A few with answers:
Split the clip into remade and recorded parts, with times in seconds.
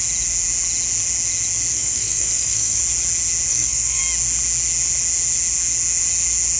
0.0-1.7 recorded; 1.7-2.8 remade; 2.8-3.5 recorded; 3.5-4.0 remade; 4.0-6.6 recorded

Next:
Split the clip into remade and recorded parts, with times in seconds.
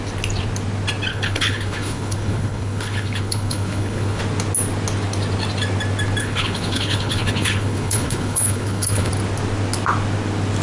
0.0-1.1 recorded; 1.1-4.2 remade; 4.2-6.2 recorded; 6.2-9.1 remade; 9.1-10.6 recorded